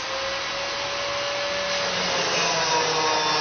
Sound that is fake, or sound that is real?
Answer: real